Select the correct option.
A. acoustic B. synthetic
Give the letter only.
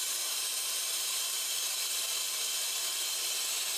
B